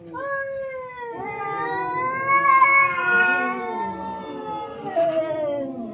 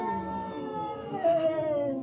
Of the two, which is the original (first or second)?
first